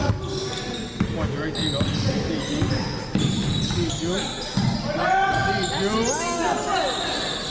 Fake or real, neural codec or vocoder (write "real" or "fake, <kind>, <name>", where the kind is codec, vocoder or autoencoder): real